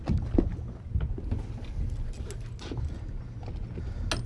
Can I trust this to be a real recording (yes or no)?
yes